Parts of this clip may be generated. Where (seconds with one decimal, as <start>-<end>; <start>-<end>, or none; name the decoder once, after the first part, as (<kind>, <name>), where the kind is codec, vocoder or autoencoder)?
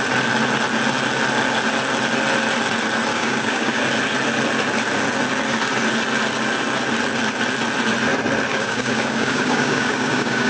3.1-3.8 (codec, DAC); 8.5-10.5